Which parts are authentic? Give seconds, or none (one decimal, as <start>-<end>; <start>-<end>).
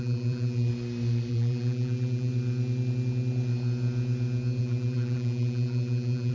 0.7-1.3; 2.3-4.6